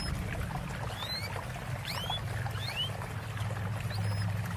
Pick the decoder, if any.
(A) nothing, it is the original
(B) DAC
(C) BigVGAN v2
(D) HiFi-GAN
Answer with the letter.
A